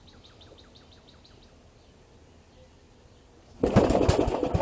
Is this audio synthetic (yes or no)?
no